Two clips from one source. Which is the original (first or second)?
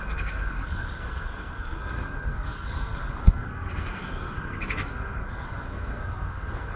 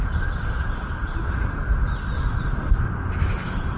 second